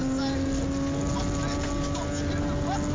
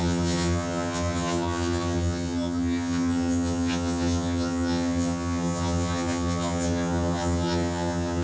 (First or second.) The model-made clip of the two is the second